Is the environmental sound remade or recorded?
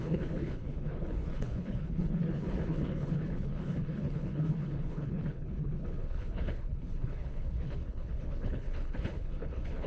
remade